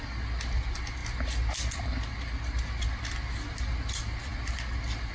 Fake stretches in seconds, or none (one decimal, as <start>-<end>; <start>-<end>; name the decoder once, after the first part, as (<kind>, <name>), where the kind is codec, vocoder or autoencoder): none